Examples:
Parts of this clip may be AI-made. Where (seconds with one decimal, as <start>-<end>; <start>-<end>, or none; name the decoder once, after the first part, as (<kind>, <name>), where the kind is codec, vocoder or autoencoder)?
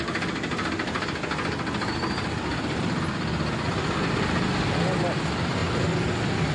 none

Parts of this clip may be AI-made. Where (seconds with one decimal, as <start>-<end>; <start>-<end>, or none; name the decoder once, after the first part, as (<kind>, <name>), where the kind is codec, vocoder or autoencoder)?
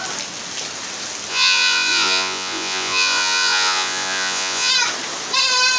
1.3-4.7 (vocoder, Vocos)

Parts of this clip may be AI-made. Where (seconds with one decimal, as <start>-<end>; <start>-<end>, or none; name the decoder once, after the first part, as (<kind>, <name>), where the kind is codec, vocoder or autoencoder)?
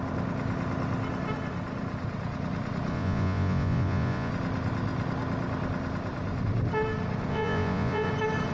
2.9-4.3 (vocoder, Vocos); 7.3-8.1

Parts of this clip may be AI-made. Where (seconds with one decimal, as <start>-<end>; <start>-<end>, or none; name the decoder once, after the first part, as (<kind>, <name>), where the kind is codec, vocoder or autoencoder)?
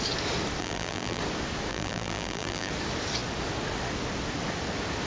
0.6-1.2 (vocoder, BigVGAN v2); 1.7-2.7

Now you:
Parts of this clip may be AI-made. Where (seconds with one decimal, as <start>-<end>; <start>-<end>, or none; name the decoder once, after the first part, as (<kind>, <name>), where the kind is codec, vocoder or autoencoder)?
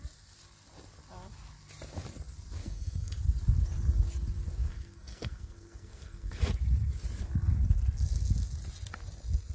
2.6-3.2 (codec, SNAC); 4.6-6.4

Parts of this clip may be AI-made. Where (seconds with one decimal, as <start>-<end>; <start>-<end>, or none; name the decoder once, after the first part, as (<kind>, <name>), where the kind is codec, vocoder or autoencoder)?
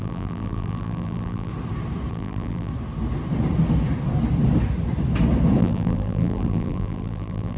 0.0-1.5 (vocoder, BigVGAN v2); 2.1-2.7; 5.6-7.6